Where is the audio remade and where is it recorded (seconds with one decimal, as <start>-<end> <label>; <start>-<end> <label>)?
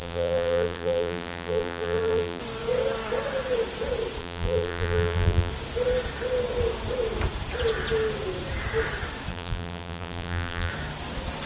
0.0-2.4 remade; 2.4-4.2 recorded; 4.2-5.5 remade; 5.5-9.3 recorded; 9.3-10.7 remade; 10.7-11.5 recorded